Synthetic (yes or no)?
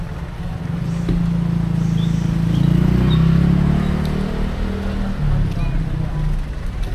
no